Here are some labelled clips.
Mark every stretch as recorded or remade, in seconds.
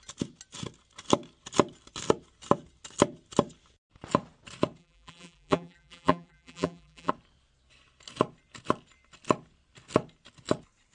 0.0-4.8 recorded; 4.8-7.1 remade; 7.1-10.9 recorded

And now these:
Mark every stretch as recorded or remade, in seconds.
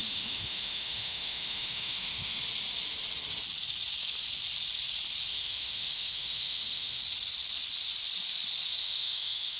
0.0-2.4 remade; 2.4-5.3 recorded; 5.3-7.0 remade; 7.0-8.8 recorded; 8.8-9.6 remade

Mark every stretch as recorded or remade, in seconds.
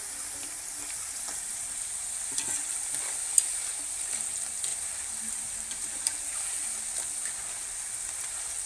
0.0-4.7 recorded; 4.7-6.4 remade; 6.4-8.7 recorded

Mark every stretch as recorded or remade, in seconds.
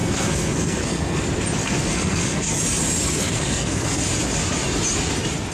0.0-1.2 remade; 1.2-1.6 recorded; 1.6-2.6 remade; 2.6-3.2 recorded; 3.2-4.0 remade; 4.0-5.5 recorded